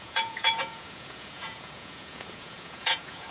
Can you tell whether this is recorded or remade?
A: remade